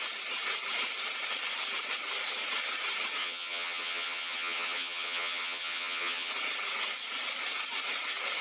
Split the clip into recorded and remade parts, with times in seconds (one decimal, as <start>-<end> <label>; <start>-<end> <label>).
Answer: 0.0-3.2 recorded; 3.2-6.3 remade; 6.3-8.4 recorded